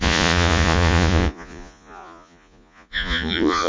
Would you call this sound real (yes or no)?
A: no